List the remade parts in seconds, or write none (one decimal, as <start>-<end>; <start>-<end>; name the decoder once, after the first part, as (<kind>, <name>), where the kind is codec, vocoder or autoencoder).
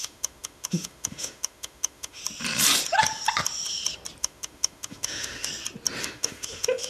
0.0-2.2 (autoencoder, DAC-VAE); 4.2-5.5; 6.0-6.9